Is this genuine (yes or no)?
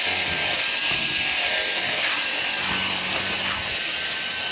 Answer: yes